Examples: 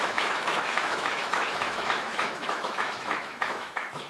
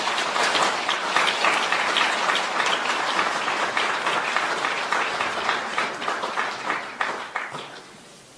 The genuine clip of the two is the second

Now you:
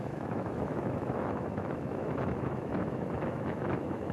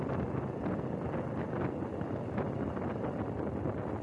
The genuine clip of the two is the second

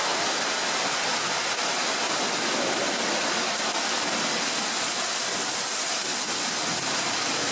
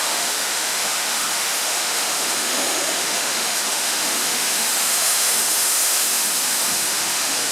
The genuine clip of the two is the first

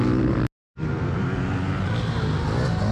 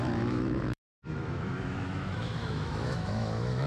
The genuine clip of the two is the first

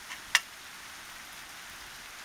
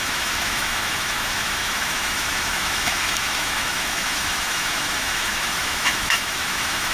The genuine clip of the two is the first